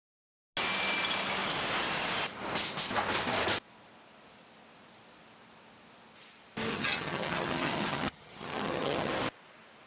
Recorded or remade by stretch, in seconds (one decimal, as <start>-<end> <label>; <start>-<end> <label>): 0.0-6.7 recorded; 6.7-9.1 remade; 9.1-9.9 recorded